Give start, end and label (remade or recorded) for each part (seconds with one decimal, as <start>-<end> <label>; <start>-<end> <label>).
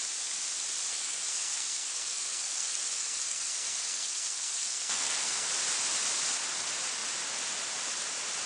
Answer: 0.0-0.9 recorded; 0.9-5.5 remade; 5.5-8.5 recorded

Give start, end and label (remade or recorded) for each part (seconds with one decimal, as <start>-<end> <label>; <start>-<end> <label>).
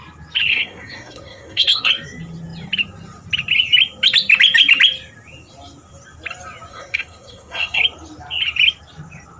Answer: 0.0-0.5 recorded; 0.5-1.9 remade; 1.9-6.7 recorded; 6.7-7.8 remade; 7.8-9.4 recorded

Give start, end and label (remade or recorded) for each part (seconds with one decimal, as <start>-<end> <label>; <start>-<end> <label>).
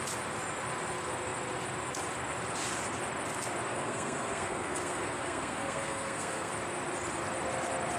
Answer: 0.0-3.7 recorded; 3.7-6.5 remade; 6.5-8.0 recorded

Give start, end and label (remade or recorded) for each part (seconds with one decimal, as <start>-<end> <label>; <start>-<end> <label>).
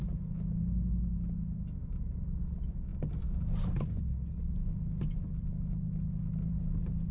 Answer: 0.0-7.1 recorded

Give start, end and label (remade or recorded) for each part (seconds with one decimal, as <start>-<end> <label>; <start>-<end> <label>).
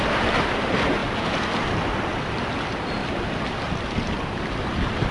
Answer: 0.0-5.1 recorded